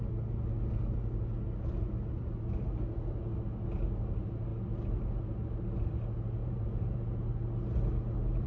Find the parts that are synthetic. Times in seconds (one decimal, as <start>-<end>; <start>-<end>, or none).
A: 6.4-7.3